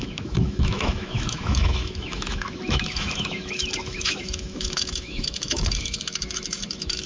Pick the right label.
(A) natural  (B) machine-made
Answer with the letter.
B